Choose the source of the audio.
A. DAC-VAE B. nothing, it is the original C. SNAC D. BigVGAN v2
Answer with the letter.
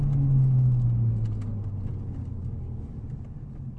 B